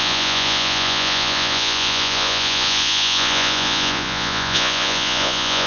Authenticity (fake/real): fake